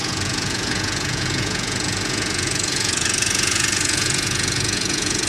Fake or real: fake